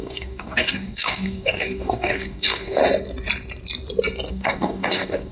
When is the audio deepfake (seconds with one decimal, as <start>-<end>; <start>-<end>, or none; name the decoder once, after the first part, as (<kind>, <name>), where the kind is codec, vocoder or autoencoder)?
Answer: 0.0-2.8 (codec, DAC); 4.3-5.3